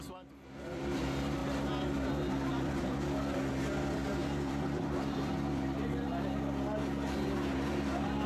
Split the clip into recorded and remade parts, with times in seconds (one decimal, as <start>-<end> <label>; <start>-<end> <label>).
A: 0.0-2.5 recorded; 2.5-3.5 remade; 3.5-4.2 recorded; 4.2-6.4 remade; 6.4-8.3 recorded